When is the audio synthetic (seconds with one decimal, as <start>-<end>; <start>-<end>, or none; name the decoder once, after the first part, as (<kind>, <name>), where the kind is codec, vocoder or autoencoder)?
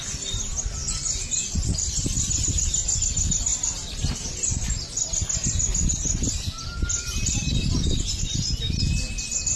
none